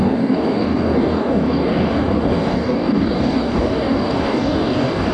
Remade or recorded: remade